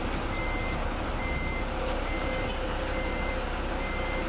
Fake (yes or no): no